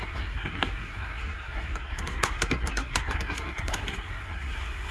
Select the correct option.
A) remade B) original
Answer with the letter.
A